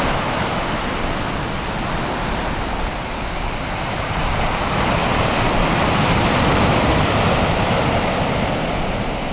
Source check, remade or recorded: recorded